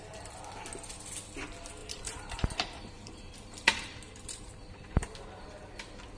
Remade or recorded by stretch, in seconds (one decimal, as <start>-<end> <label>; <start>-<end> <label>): 0.0-1.8 recorded; 1.8-5.5 remade; 5.5-6.2 recorded